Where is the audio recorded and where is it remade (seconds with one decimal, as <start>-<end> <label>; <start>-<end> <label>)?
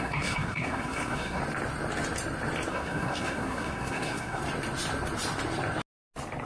0.0-1.4 remade; 1.4-2.7 recorded; 2.7-4.4 remade; 4.4-6.5 recorded